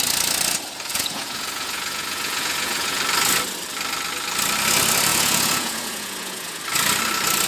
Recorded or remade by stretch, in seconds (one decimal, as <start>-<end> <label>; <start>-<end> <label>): 0.0-0.9 recorded; 0.9-3.0 remade; 3.0-5.1 recorded; 5.1-6.6 remade; 6.6-7.5 recorded